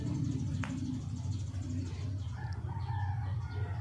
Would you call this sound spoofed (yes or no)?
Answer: no